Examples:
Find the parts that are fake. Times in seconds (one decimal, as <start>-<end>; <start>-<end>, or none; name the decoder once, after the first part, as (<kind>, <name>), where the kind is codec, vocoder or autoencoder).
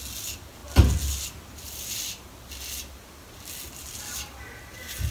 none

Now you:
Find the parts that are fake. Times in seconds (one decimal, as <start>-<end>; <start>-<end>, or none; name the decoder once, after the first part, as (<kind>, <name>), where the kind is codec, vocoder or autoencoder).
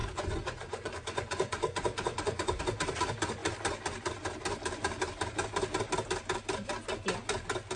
0.0-2.6 (vocoder, Vocos)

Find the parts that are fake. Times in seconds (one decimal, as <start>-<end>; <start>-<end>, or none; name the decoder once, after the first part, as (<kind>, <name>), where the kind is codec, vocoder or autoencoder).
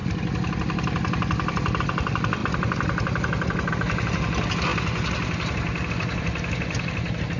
none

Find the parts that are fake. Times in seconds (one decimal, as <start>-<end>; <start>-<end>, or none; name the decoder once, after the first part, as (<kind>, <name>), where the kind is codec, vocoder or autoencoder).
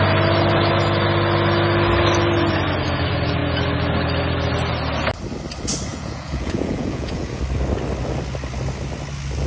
5.9-7.4 (vocoder, Vocos)